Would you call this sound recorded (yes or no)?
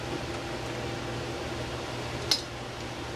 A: yes